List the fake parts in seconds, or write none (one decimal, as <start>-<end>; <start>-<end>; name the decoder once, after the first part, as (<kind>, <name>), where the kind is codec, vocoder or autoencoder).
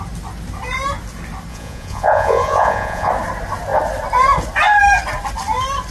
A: 1.5-3.1 (vocoder, Vocos)